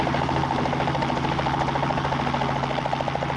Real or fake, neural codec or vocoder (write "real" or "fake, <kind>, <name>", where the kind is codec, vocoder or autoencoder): real